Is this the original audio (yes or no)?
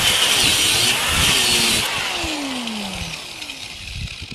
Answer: yes